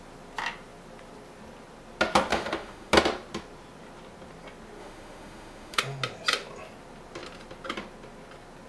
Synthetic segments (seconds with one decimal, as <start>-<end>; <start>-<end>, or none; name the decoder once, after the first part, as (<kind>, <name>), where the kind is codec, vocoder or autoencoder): 2.3-2.9 (autoencoder, DAC-VAE); 4.8-5.8

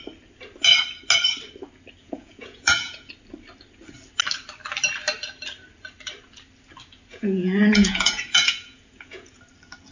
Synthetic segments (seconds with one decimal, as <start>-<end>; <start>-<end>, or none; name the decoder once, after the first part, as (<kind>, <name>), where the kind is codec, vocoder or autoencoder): 2.0-3.1 (vocoder, Vocos); 7.1-9.4

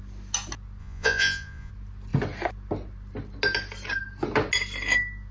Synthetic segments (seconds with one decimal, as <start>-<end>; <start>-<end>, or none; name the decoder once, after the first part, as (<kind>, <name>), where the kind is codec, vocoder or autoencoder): 0.8-1.7 (vocoder, Vocos)

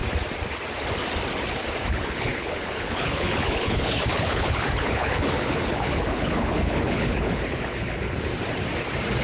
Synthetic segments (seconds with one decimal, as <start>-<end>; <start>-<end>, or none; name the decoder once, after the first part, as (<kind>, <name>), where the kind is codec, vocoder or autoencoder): 1.9-8.3 (codec, HILCodec)

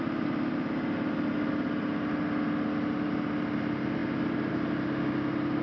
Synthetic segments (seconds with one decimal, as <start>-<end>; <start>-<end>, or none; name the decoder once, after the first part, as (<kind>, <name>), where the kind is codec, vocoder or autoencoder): none

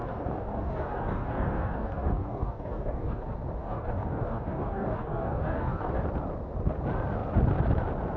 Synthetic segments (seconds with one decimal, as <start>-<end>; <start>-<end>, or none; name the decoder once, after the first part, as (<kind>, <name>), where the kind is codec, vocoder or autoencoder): 0.0-3.2 (codec, DAC); 3.6-5.9